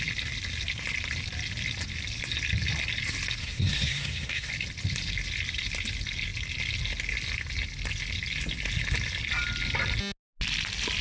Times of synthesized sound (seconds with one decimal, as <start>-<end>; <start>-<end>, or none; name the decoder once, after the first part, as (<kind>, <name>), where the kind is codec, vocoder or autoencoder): 3.4-4.5 (codec, SNAC)